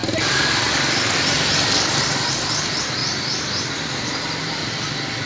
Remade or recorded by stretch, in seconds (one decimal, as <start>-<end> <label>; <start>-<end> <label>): 0.0-5.3 recorded